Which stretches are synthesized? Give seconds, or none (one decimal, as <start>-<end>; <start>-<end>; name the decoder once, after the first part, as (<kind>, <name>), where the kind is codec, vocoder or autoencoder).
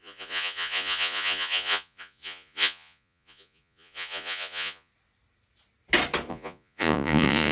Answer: 0.0-4.9 (vocoder, Vocos); 6.3-7.5